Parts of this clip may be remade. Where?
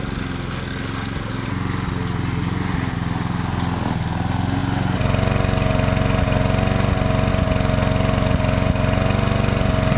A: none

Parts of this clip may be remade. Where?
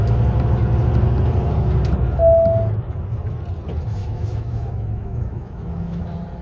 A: 4.0-6.0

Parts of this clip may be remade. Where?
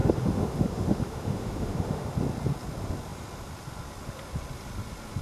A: 0.0-2.1